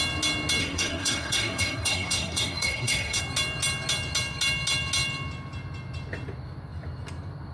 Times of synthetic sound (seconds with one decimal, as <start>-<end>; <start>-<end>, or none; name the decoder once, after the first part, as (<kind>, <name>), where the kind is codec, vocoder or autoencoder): 0.6-3.2 (codec, SNAC)